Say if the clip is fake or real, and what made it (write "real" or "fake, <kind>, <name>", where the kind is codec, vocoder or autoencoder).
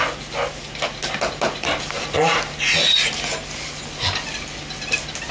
real